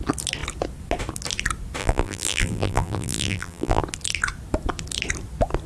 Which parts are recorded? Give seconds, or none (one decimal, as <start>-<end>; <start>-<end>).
0.0-1.8; 3.8-5.7